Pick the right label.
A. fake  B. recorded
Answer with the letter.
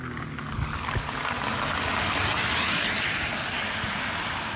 B